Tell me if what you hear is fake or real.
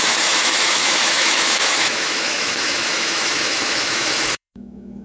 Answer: fake